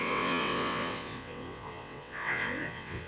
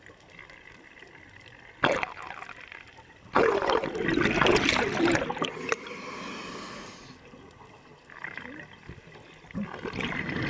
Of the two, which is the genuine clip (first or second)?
second